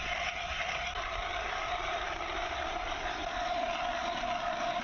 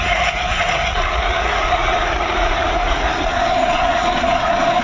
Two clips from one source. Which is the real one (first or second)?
first